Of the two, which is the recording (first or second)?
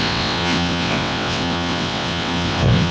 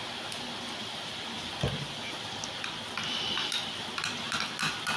second